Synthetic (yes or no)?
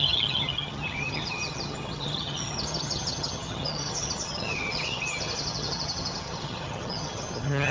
yes